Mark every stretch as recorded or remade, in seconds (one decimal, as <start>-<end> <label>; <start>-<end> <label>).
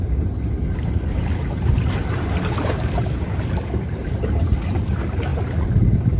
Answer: 0.0-6.2 recorded